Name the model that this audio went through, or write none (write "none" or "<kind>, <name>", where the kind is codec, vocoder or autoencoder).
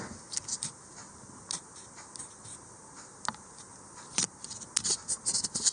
none